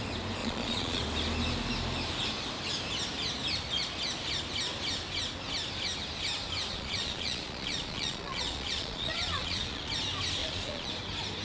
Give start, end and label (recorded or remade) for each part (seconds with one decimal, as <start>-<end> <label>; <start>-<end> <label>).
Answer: 0.0-0.4 recorded; 0.4-1.0 remade; 1.0-6.7 recorded; 6.7-9.9 remade; 9.9-10.4 recorded; 10.4-10.9 remade; 10.9-11.4 recorded